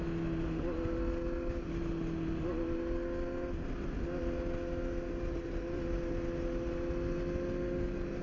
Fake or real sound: real